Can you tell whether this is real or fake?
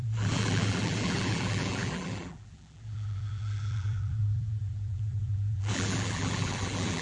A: fake